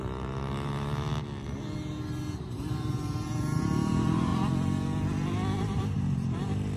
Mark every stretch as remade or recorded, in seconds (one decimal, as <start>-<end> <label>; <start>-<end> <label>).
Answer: 0.0-1.1 remade; 1.1-2.4 recorded; 2.4-4.3 remade; 4.3-5.6 recorded; 5.6-6.8 remade